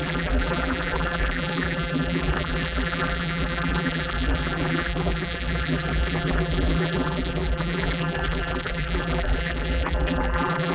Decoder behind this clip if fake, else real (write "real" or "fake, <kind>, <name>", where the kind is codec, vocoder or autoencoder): fake, vocoder, BigVGAN v2